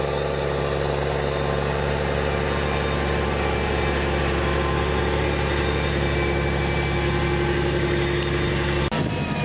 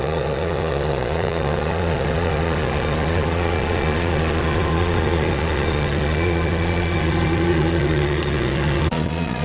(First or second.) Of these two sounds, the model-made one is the second